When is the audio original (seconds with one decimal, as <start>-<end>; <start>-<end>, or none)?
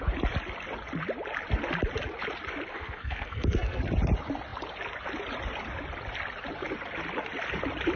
0.0-2.7; 3.8-8.0